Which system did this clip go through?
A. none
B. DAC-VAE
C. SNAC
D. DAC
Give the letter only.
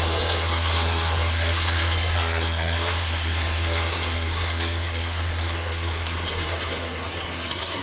C